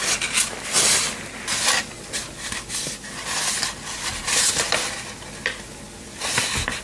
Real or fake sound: real